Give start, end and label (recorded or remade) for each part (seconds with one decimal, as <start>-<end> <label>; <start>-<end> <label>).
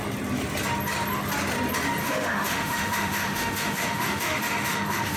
0.0-2.0 recorded; 2.0-5.2 remade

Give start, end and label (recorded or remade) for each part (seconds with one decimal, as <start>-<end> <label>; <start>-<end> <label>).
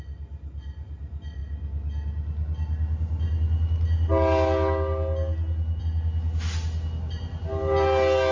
0.0-8.3 recorded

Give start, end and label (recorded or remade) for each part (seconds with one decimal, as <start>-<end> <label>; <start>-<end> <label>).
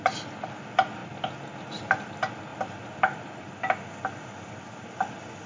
0.0-5.5 recorded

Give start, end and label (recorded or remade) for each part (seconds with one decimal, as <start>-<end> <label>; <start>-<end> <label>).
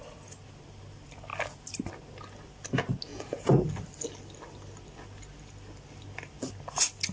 0.0-3.1 recorded; 3.1-3.7 remade; 3.7-7.1 recorded